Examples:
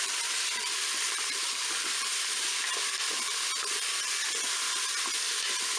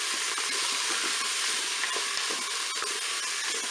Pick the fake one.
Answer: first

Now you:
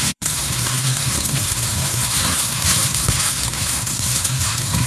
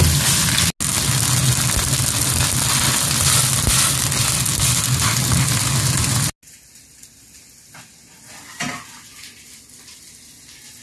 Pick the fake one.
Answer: first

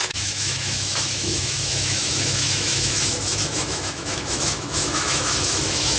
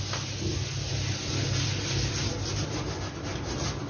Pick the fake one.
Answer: first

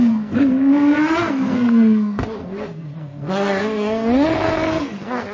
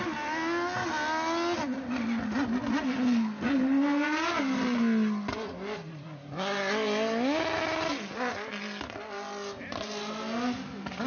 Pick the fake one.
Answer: first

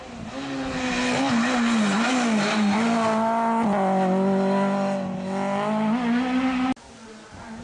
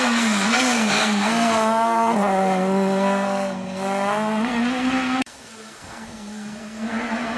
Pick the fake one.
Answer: second